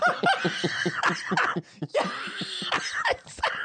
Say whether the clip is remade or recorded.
recorded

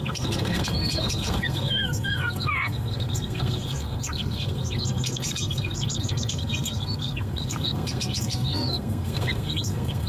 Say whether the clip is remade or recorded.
remade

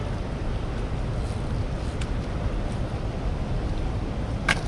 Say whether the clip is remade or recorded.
recorded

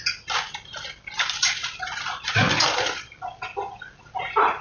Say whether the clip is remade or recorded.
recorded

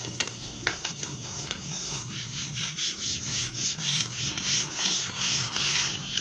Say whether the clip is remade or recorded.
remade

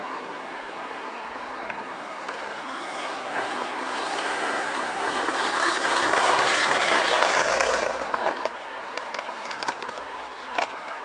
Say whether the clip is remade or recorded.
remade